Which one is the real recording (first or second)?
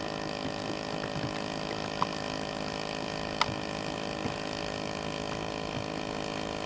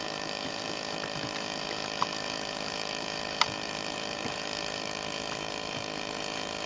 first